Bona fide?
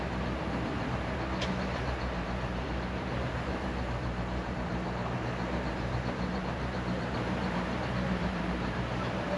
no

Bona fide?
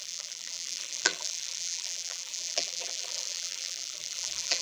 no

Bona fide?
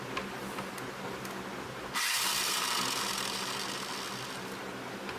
yes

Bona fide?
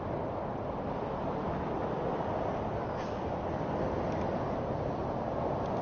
no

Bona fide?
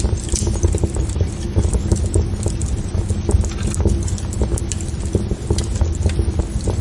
yes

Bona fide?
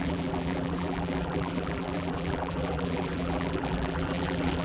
no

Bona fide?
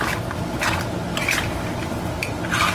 yes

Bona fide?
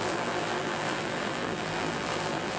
no